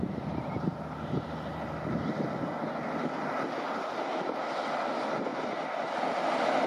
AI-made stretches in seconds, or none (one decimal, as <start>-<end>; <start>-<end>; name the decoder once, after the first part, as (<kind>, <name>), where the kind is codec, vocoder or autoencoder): none